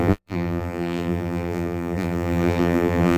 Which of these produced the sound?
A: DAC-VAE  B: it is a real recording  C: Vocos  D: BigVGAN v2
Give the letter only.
D